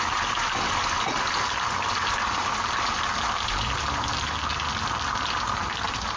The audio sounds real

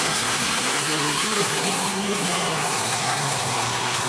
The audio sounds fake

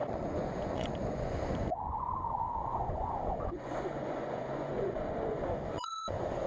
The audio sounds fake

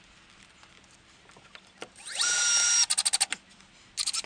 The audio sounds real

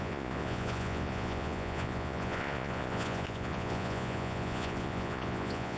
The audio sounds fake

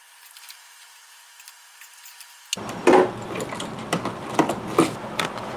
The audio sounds real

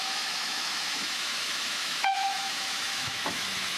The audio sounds fake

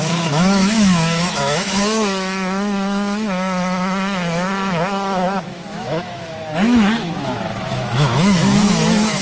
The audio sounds fake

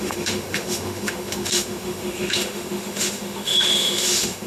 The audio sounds fake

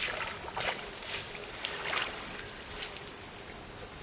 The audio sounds real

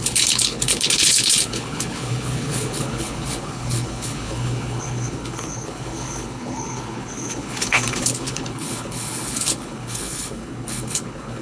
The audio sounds fake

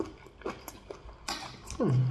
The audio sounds real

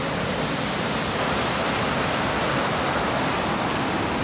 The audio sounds real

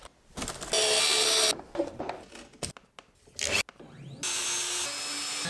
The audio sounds real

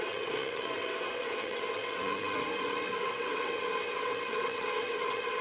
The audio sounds fake